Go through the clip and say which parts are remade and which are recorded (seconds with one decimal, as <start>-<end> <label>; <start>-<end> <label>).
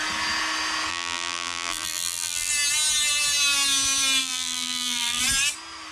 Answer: 0.0-0.9 recorded; 0.9-2.5 remade; 2.5-4.2 recorded; 4.2-5.2 remade; 5.2-5.9 recorded